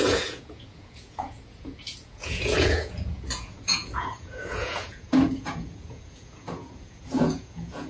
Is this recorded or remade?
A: remade